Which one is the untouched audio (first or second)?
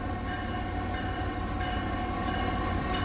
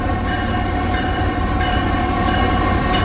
first